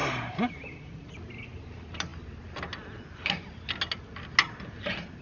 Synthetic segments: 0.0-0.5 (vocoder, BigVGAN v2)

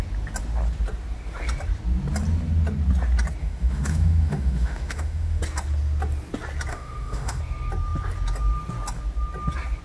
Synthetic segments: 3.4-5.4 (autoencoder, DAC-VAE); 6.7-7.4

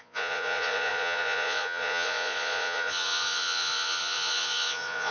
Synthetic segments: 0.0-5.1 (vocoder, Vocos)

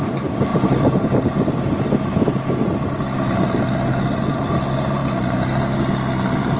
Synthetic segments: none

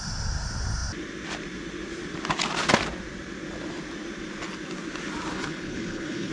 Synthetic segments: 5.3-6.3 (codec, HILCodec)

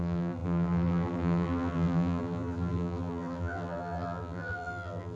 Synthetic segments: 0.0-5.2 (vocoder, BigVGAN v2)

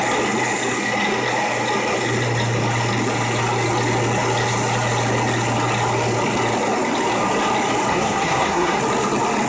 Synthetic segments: 7.9-8.8 (codec, SNAC)